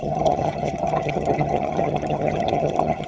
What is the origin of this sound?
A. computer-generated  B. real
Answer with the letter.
A